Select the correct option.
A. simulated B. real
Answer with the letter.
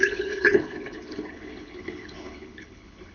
A